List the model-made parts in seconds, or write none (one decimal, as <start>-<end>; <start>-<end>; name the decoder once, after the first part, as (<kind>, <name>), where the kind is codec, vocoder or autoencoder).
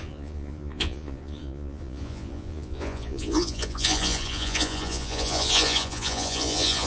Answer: 0.0-6.9 (vocoder, Vocos)